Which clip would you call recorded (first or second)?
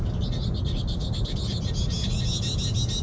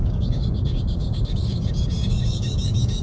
first